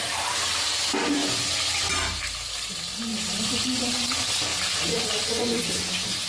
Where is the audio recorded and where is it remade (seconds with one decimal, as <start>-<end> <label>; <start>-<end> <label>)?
0.0-1.2 recorded; 1.2-2.7 remade; 2.7-3.1 recorded; 3.1-3.9 remade; 3.9-4.5 recorded; 4.5-5.6 remade; 5.6-6.3 recorded